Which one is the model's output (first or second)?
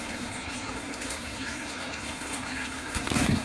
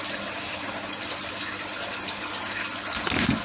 first